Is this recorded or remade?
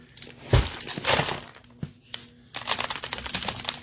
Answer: recorded